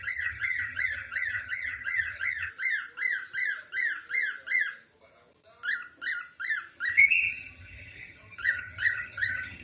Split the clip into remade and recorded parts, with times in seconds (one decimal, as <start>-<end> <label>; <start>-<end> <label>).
0.0-2.5 remade; 2.5-6.9 recorded; 6.9-9.6 remade